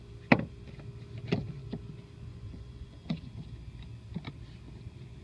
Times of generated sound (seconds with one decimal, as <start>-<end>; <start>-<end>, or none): 2.3-3.3